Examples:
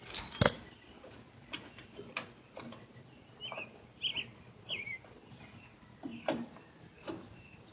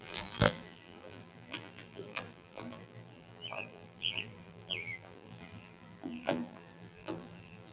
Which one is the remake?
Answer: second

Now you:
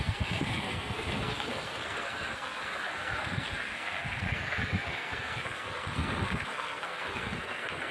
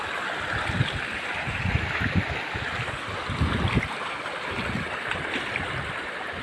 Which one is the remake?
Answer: first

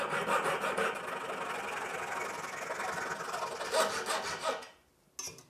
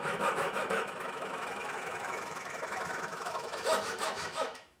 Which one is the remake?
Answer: second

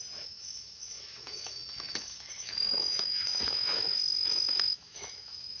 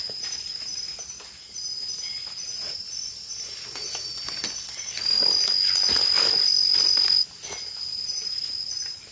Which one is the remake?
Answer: first